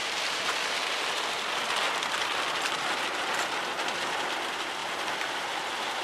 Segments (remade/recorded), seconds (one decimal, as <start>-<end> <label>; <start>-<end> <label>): 0.0-6.0 recorded